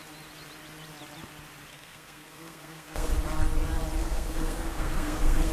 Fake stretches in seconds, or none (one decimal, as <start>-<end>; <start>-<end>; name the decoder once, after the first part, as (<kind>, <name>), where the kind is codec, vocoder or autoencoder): 1.7-3.1 (codec, SNAC); 4.0-5.5